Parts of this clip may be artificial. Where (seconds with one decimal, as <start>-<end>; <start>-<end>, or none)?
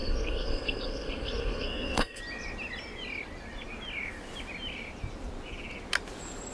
0.0-2.2